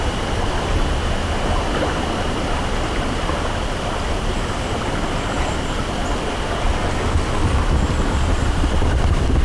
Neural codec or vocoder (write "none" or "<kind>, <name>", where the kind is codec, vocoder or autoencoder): none